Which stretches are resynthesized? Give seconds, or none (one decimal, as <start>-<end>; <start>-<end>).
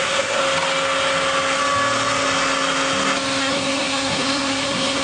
0.0-0.4; 3.4-5.0